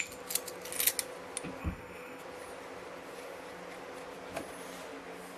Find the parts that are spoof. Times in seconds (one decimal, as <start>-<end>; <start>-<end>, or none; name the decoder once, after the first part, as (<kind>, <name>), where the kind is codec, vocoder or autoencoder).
1.6-2.2 (codec, SNAC)